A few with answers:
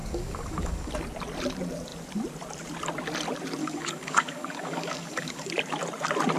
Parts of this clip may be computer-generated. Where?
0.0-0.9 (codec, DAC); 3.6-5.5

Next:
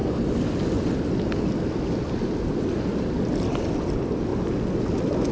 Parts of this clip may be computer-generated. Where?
none

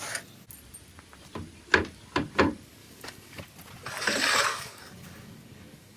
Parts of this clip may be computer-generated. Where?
2.8-3.4 (codec, DAC); 4.5-6.0

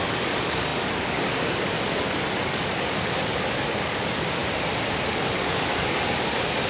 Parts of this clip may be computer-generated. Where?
0.0-4.4 (codec, DAC); 5.1-6.7

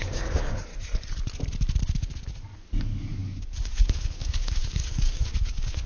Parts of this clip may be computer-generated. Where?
0.0-0.7 (codec, DAC); 2.8-5.9

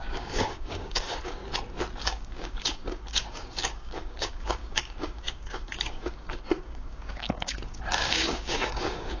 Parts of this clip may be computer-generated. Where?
0.0-1.4 (codec, DAC); 2.0-9.2